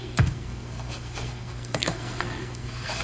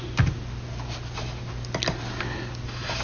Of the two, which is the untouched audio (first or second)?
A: second